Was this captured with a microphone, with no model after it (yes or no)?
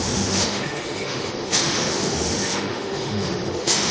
no